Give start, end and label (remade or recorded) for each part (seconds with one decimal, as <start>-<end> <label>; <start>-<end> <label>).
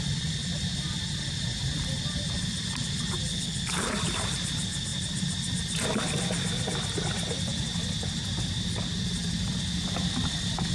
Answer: 0.0-3.3 recorded; 3.3-3.9 remade; 3.9-10.7 recorded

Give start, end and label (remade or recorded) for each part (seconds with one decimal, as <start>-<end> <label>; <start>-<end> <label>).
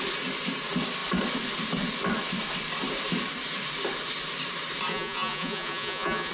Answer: 0.0-4.9 recorded; 4.9-6.3 remade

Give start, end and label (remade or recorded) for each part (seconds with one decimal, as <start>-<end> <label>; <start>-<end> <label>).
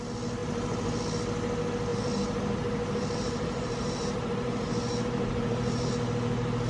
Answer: 0.0-0.4 recorded; 0.4-1.0 remade; 1.0-1.9 recorded; 1.9-5.9 remade; 5.9-6.7 recorded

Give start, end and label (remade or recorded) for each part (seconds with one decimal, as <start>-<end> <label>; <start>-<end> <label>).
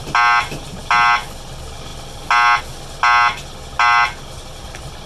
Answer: 0.0-5.1 recorded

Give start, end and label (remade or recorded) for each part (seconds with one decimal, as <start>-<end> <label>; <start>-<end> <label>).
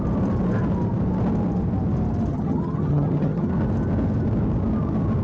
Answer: 0.0-2.3 recorded; 2.3-3.5 remade; 3.5-5.2 recorded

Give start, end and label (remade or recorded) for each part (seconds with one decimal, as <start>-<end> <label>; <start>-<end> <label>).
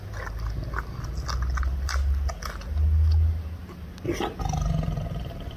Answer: 0.0-5.6 recorded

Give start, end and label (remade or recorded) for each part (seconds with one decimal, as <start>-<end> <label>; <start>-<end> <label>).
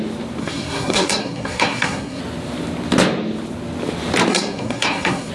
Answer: 0.0-0.4 recorded; 0.4-2.2 remade; 2.2-4.3 recorded; 4.3-5.3 remade